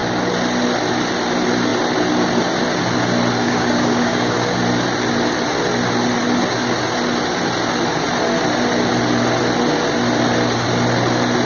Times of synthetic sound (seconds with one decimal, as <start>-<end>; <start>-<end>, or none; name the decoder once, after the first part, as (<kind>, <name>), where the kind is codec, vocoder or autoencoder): 3.4-4.3 (codec, DAC)

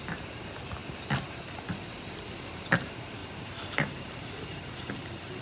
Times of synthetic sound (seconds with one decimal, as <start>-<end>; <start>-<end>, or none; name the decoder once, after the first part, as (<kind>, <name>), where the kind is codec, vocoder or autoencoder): 3.2-4.9 (vocoder, BigVGAN v2)

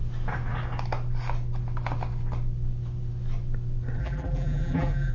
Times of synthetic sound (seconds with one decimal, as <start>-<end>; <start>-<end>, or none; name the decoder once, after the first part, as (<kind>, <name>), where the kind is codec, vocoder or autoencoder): 4.0-5.1 (vocoder, BigVGAN v2)

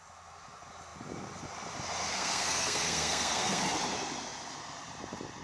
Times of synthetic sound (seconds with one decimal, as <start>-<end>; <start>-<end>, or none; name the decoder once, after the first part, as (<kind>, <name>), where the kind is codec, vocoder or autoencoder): 2.1-3.6 (codec, SNAC)

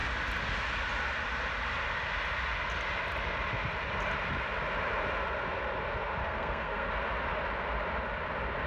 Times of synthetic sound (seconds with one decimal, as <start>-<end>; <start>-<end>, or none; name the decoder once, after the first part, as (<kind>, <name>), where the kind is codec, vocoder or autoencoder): 6.2-6.9 (codec, SNAC)

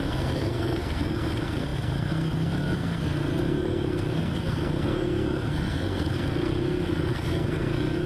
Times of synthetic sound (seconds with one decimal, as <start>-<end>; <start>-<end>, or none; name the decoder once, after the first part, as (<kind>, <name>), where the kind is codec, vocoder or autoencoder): 0.0-8.1 (codec, SNAC)

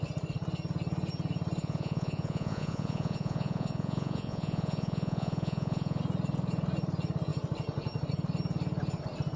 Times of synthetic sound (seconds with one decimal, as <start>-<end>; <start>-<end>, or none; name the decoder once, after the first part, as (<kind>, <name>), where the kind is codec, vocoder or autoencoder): 1.6-6.0 (vocoder, Vocos)

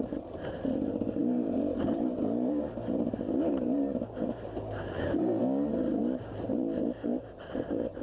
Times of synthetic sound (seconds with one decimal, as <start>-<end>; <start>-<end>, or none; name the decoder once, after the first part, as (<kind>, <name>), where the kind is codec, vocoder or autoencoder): 0.0-5.4 (vocoder, BigVGAN v2); 6.0-8.0